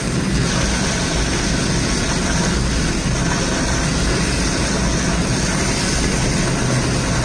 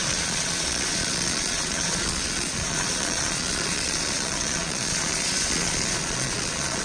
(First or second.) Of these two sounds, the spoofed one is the second